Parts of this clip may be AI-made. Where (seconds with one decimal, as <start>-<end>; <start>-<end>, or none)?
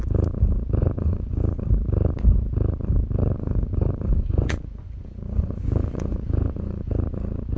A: 0.8-1.4; 3.2-6.9